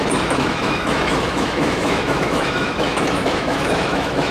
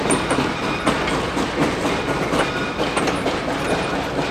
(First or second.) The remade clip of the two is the first